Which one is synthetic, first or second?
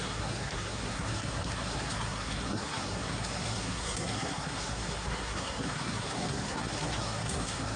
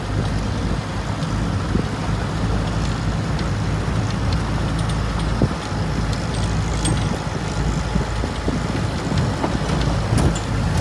first